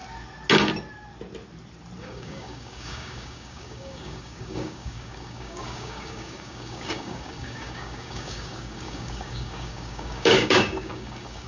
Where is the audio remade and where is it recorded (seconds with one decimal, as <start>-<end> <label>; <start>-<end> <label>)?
0.0-2.0 recorded; 2.0-11.5 remade